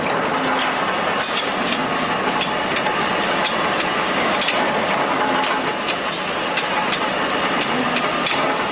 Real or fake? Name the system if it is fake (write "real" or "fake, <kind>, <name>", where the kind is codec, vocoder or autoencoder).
real